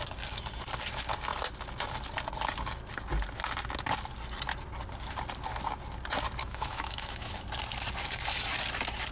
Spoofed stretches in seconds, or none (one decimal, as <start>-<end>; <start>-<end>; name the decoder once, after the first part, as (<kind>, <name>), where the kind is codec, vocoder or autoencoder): 6.4-7.4 (autoencoder, DAC-VAE)